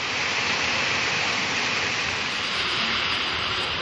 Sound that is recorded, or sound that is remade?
remade